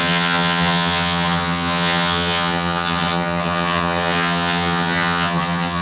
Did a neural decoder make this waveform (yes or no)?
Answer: yes